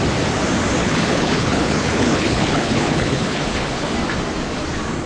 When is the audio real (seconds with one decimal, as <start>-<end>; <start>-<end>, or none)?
0.0-0.8; 3.9-5.1